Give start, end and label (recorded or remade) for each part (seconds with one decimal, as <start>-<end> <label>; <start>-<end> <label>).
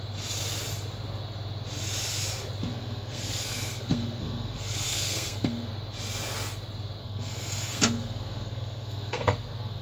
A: 0.0-2.7 recorded; 2.7-5.7 remade; 5.7-7.0 recorded; 7.0-9.8 remade